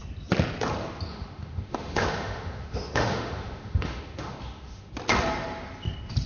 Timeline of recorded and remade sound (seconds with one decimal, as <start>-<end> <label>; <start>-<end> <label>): 0.0-1.1 recorded; 1.1-4.9 remade; 4.9-6.3 recorded